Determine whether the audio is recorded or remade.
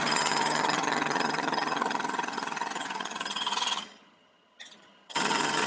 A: remade